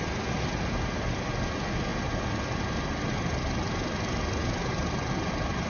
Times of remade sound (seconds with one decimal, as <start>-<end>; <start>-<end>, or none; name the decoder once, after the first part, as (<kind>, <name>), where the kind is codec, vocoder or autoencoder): none